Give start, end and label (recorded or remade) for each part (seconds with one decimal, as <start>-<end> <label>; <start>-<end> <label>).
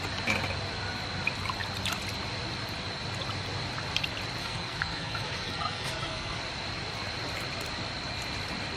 0.0-4.4 recorded; 4.4-6.4 remade; 6.4-8.8 recorded